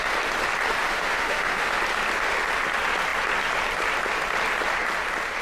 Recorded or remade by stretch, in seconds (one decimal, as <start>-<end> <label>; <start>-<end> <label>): 0.0-0.8 recorded; 0.8-1.8 remade; 1.8-5.4 recorded

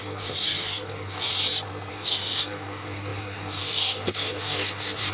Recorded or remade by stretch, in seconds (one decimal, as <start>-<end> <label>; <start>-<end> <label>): 0.0-1.3 remade; 1.3-1.9 recorded; 1.9-5.1 remade

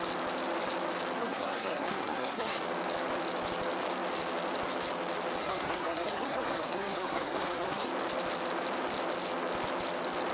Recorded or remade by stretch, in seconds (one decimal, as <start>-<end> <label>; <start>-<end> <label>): 0.0-1.2 recorded; 1.2-2.6 remade; 2.6-5.4 recorded; 5.4-7.9 remade; 7.9-10.3 recorded

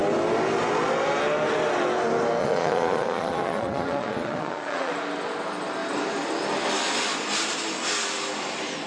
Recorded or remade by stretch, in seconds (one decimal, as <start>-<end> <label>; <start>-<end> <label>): 0.0-2.4 recorded; 2.4-4.9 remade; 4.9-8.9 recorded

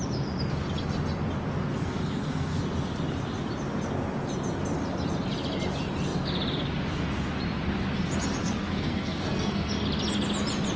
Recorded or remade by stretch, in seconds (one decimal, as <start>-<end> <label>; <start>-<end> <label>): 0.0-1.7 recorded; 1.7-2.6 remade; 2.6-8.4 recorded; 8.4-9.7 remade; 9.7-10.8 recorded

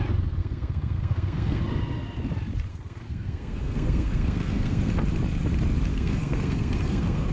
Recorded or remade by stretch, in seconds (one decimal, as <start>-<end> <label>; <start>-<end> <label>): 0.0-0.4 recorded; 0.4-1.6 remade; 1.6-2.7 recorded; 2.7-4.9 remade; 4.9-5.9 recorded; 5.9-7.3 remade

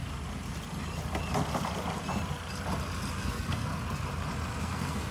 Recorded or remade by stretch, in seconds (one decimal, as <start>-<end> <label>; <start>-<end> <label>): 0.0-3.1 recorded; 3.1-3.7 remade; 3.7-4.6 recorded; 4.6-5.1 remade

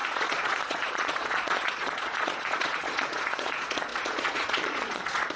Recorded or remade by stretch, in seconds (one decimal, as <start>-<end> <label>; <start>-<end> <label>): 0.0-5.4 remade